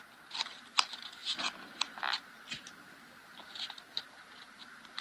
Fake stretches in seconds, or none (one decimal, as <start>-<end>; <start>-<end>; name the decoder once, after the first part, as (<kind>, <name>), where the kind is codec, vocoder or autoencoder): none